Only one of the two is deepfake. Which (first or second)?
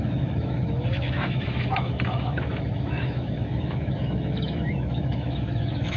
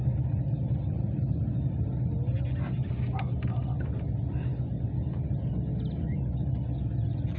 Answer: first